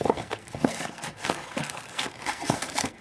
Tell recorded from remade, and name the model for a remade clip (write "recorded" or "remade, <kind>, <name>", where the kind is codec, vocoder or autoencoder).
remade, codec, SNAC